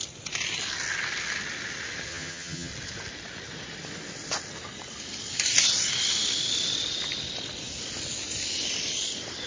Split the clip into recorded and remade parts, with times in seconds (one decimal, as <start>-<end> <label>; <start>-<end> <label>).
0.0-2.1 recorded; 2.1-2.7 remade; 2.7-9.5 recorded